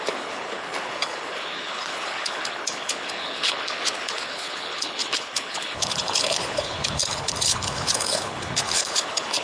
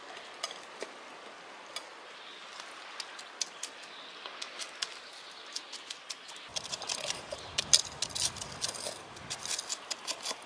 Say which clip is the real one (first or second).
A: second